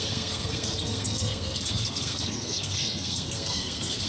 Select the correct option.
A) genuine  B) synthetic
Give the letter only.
B